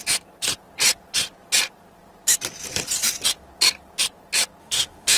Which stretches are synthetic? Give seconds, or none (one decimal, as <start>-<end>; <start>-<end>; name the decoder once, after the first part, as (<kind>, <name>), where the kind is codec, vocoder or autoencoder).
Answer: 4.6-5.2 (autoencoder, DAC-VAE)